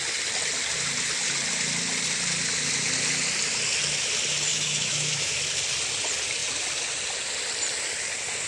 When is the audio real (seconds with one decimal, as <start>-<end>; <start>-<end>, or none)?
0.0-4.5; 5.3-8.5